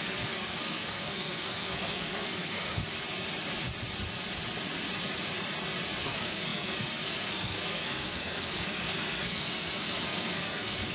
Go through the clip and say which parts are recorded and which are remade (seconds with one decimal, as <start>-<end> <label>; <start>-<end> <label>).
0.0-2.8 remade; 2.8-6.0 recorded; 6.0-10.9 remade